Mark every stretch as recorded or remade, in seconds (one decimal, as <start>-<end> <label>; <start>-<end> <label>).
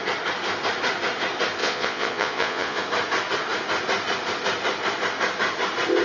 0.0-1.6 recorded; 1.6-2.8 remade; 2.8-6.0 recorded